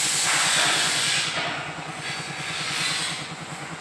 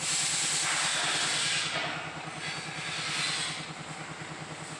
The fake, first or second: first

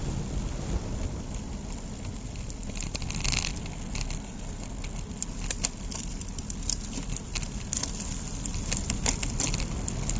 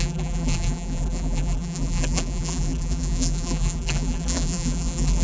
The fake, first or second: second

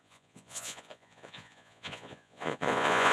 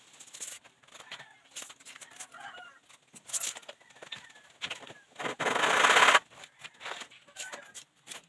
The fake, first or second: first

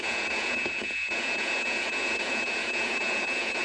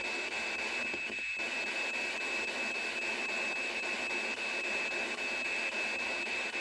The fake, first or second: first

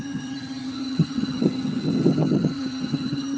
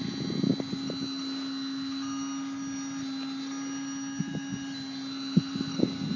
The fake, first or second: first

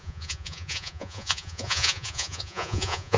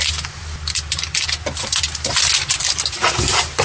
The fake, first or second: first